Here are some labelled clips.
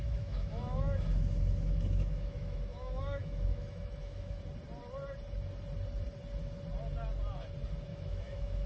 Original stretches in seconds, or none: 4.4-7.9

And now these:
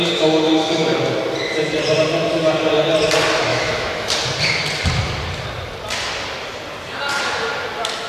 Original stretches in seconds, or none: 0.0-3.5; 4.1-8.1

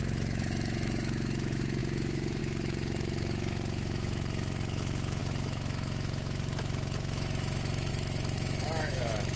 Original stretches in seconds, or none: none

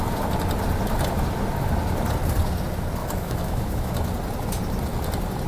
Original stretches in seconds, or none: 0.0-3.0; 3.9-5.5

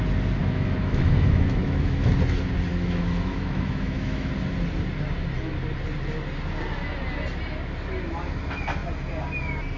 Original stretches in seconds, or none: 0.0-0.4; 2.1-2.7; 4.3-9.8

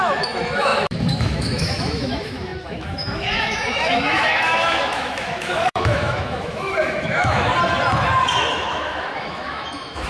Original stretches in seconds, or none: 7.5-8.4

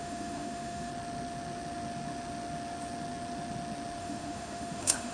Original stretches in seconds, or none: 0.9-4.0